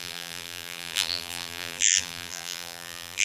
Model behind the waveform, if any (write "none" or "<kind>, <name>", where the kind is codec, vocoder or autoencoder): vocoder, BigVGAN v2